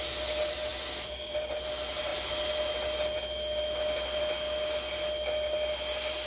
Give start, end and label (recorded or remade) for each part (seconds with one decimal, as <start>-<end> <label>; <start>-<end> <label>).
0.0-6.3 recorded